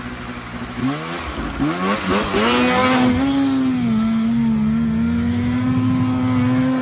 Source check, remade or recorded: recorded